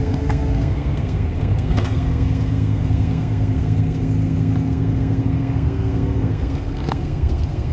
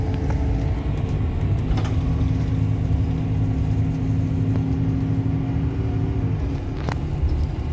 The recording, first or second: second